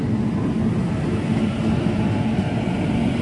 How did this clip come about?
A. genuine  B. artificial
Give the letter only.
B